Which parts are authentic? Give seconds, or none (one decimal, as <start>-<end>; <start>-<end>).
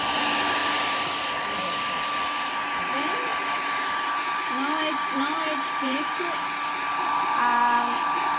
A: 0.0-0.6; 2.5-3.3; 8.0-8.4